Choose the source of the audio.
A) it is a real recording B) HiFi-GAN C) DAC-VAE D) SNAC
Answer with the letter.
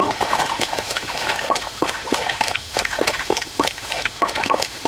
C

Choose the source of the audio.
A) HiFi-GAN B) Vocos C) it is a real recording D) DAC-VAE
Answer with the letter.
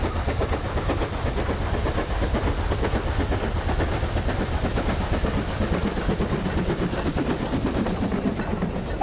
C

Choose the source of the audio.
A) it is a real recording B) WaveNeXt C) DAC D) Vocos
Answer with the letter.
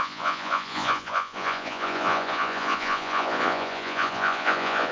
D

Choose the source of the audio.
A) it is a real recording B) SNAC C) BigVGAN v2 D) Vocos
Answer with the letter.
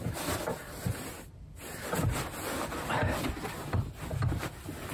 A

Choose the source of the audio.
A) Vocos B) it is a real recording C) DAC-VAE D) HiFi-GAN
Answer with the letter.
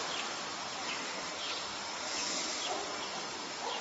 B